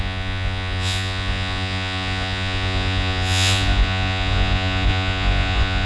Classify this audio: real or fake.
fake